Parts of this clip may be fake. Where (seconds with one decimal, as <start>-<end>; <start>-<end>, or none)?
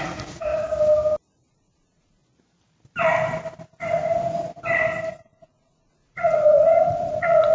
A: 0.0-0.5; 1.5-2.2; 5.1-7.5